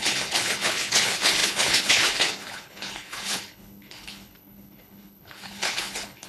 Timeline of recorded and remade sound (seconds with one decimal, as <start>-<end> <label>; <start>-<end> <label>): 0.0-6.3 remade